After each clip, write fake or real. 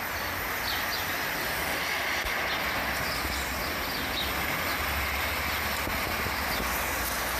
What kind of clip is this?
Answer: real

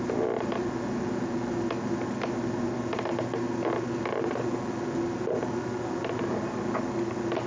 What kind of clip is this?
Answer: real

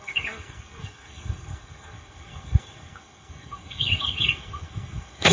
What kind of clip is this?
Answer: fake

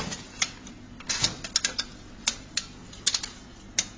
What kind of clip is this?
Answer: real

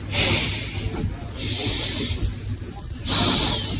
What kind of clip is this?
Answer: real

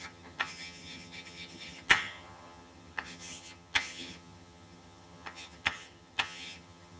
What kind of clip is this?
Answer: fake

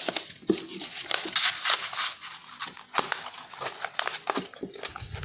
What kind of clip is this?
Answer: real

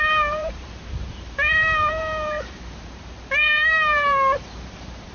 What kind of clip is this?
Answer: fake